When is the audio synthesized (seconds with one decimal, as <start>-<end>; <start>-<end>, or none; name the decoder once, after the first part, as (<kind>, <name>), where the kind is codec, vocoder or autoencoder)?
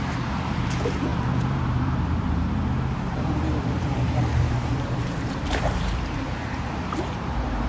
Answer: 0.0-7.7 (vocoder, BigVGAN v2)